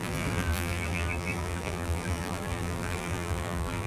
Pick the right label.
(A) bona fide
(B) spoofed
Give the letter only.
B